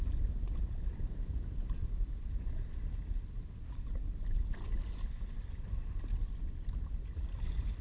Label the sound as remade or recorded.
recorded